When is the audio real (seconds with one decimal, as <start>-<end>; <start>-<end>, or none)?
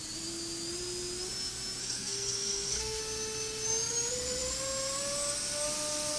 0.0-1.8; 3.0-6.2